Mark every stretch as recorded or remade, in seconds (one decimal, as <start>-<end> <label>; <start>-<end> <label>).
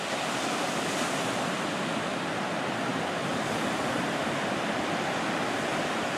0.0-2.9 recorded; 2.9-3.9 remade; 3.9-6.2 recorded